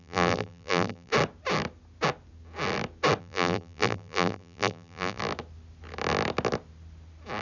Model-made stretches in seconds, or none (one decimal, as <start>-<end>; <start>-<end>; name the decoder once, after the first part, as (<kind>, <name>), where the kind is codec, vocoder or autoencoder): 0.0-1.1 (vocoder, BigVGAN v2); 3.2-5.2

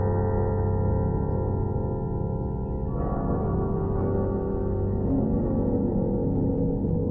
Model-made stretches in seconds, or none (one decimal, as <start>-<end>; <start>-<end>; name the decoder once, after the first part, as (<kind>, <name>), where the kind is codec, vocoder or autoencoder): none

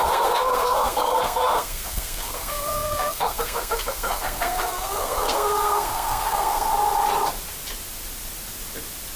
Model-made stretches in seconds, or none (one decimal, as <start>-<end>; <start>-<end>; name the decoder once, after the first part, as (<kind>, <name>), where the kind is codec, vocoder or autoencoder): 0.0-6.7 (codec, SNAC)

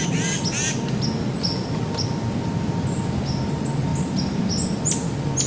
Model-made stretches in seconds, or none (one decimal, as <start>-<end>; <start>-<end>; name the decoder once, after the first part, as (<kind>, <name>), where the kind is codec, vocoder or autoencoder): none